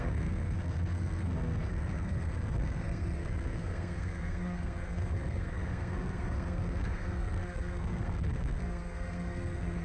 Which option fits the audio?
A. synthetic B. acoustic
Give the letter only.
A